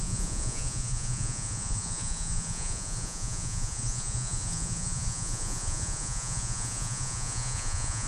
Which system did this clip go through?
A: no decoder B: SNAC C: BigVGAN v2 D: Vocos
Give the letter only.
D